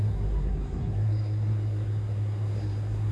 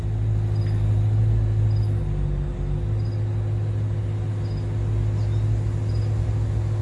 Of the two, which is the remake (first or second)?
first